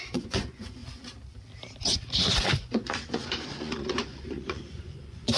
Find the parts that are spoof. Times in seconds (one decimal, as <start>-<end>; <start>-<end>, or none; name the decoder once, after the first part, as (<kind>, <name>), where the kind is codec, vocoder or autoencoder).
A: 0.0-0.8 (vocoder, Vocos); 2.4-5.4